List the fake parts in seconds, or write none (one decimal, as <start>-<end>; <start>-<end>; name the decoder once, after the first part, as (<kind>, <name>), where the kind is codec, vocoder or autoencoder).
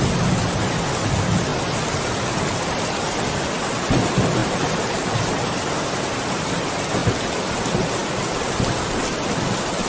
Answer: none